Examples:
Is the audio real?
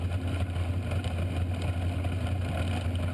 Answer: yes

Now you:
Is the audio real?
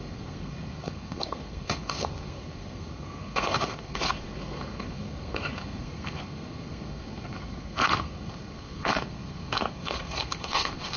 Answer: no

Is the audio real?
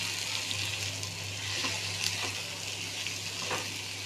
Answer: yes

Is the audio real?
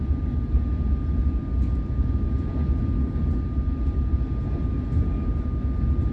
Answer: yes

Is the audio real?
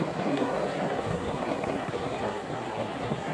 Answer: no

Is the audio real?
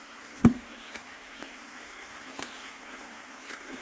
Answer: no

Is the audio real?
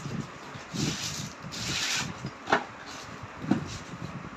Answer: yes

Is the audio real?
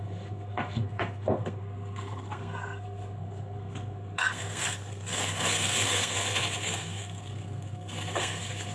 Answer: no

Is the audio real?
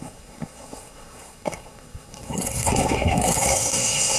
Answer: no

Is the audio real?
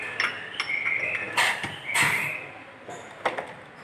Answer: yes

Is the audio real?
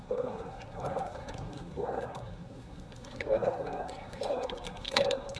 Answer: no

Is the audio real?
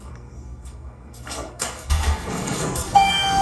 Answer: no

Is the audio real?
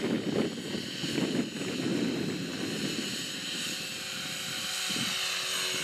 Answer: yes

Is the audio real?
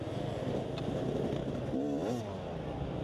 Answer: yes